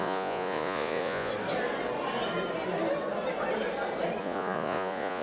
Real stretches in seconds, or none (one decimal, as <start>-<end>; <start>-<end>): 1.3-4.2